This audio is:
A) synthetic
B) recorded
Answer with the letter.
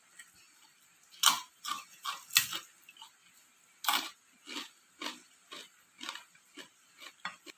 B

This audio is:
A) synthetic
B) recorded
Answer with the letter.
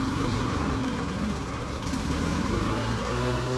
A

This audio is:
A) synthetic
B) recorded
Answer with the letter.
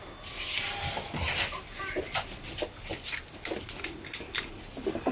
B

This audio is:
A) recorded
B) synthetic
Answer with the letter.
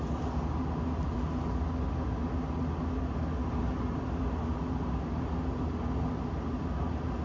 A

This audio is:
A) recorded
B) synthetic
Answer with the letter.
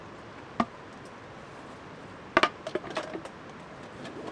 A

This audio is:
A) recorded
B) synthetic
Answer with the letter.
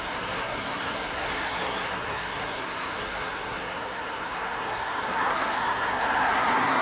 B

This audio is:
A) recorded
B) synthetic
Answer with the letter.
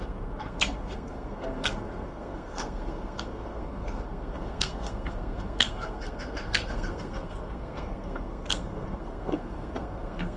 B